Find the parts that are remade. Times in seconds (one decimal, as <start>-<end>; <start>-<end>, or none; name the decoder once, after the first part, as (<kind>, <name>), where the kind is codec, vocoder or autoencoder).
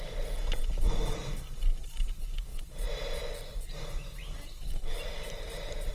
none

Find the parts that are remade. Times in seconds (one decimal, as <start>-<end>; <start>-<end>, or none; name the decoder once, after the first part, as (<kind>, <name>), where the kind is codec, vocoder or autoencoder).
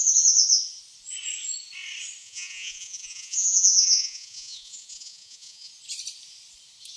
2.2-5.7 (vocoder, Vocos)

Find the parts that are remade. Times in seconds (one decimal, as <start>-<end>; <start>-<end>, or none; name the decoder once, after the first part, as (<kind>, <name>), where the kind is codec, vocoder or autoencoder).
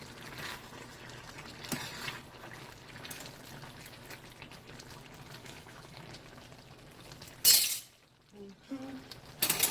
5.4-6.0 (autoencoder, DAC-VAE)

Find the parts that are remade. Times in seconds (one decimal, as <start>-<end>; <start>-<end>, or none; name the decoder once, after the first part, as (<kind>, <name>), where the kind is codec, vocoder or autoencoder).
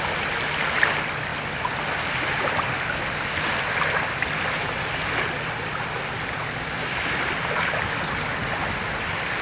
none